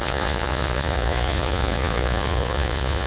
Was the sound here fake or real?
fake